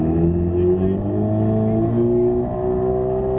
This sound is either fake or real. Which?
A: real